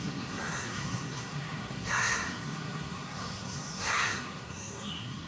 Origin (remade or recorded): remade